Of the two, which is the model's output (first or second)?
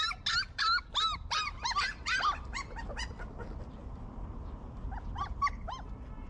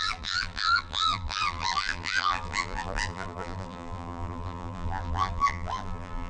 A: second